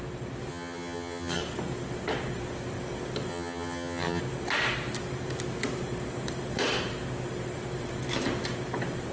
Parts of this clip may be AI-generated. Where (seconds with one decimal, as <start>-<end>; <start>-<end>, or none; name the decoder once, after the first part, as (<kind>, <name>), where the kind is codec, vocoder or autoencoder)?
0.5-1.4 (vocoder, HiFi-GAN); 3.3-4.2